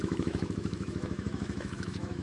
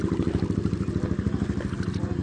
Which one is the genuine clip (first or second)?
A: second